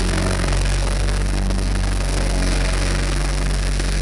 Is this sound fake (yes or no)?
yes